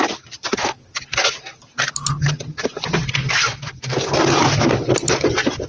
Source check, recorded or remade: recorded